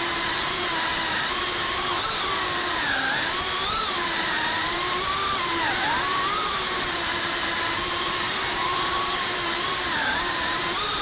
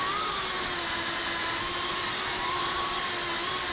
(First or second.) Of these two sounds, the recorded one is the second